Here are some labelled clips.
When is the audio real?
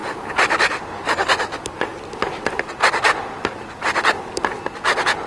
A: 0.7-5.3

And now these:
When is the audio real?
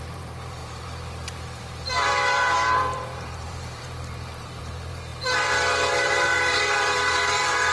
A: none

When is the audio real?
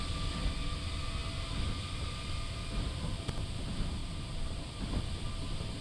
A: 0.0-4.0; 4.8-5.8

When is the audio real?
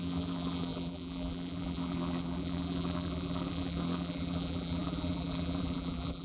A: none